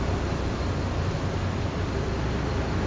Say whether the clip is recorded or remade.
recorded